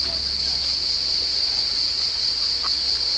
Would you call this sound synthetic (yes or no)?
no